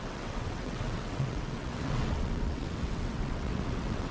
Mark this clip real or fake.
fake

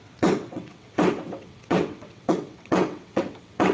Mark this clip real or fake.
fake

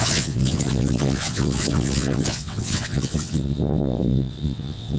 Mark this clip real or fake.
fake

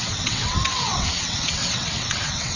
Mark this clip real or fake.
fake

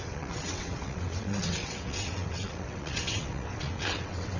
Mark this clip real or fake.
fake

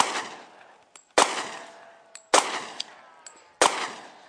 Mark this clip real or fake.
real